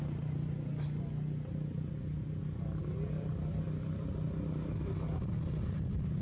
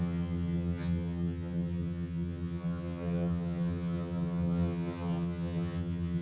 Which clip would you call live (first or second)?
first